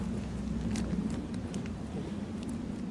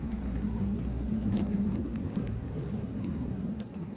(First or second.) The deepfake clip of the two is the second